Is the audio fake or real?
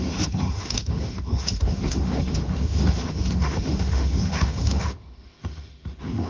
fake